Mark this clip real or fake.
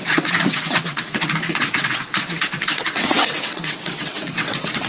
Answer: fake